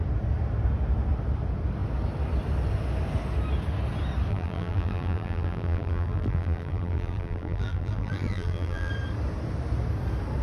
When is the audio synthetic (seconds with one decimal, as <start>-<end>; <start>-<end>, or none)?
4.3-8.9